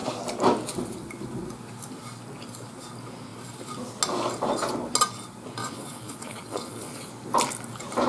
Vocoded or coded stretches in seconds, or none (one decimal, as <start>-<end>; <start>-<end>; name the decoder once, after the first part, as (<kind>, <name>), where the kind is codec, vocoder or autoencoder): 5.6-7.1 (vocoder, Vocos)